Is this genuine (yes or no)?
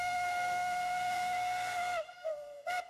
no